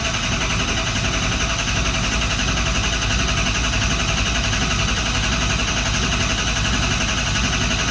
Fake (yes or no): no